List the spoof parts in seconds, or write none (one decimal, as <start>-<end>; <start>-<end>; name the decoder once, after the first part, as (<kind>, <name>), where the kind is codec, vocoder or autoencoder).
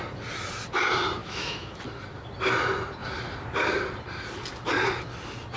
1.2-1.8 (autoencoder, DAC-VAE)